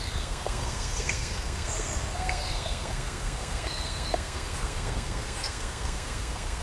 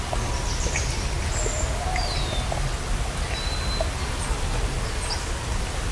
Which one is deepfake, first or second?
first